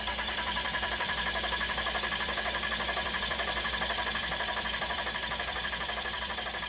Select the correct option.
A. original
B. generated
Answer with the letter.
B